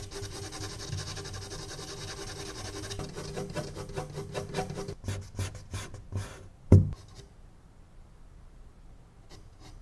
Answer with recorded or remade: recorded